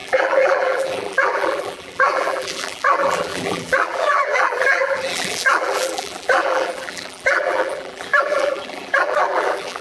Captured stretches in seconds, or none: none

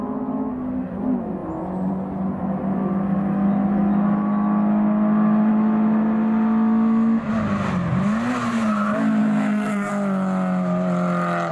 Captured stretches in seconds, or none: 0.0-9.2; 9.9-11.5

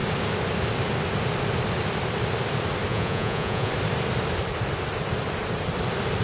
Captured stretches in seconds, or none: 0.0-2.9; 3.7-6.2

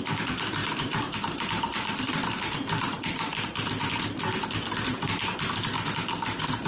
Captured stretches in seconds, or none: 0.0-0.6; 3.1-6.7

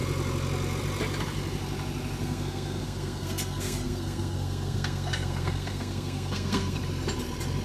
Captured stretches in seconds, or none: 0.0-2.2; 6.8-7.6